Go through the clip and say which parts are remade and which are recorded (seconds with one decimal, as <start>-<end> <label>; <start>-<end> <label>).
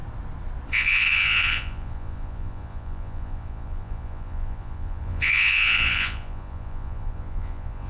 0.0-0.7 recorded; 0.7-7.9 remade